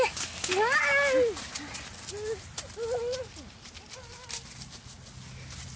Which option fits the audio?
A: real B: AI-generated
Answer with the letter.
A